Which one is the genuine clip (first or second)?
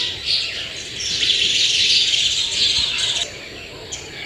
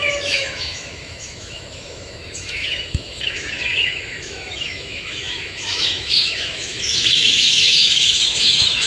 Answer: first